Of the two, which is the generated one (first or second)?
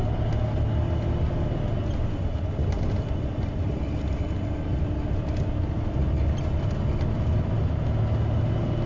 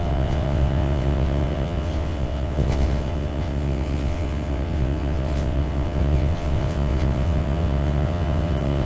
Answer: second